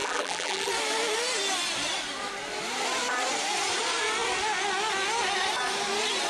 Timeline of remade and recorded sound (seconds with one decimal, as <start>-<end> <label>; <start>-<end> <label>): 0.0-0.7 remade; 0.7-6.3 recorded